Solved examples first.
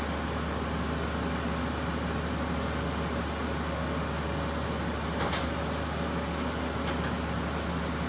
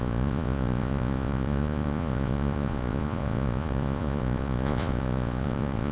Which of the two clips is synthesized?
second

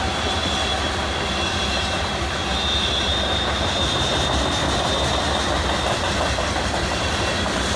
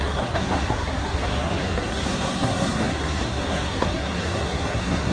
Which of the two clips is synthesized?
second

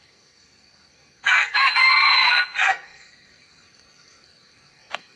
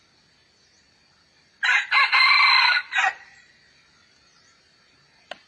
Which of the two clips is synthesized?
first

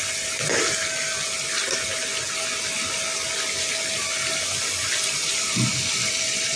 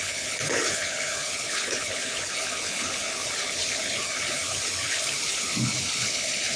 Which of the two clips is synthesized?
second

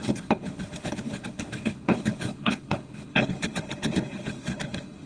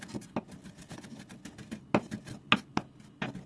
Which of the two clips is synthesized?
first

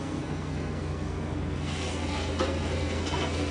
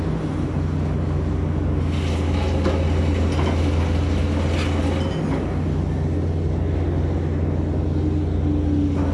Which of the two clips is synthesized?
first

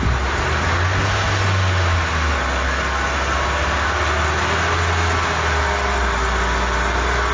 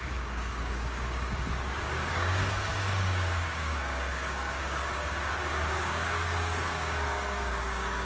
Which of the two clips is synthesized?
second